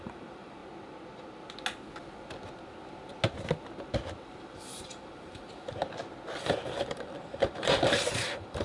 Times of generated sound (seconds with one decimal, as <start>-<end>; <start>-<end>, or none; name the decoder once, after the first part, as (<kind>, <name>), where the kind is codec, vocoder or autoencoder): 0.0-0.6 (vocoder, BigVGAN v2); 4.4-5.8; 6.4-8.6